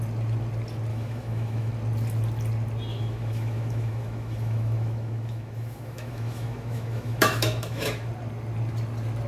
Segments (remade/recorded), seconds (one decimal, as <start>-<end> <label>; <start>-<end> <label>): 0.0-0.9 recorded; 0.9-1.7 remade; 1.7-2.9 recorded; 2.9-8.1 remade; 8.1-9.3 recorded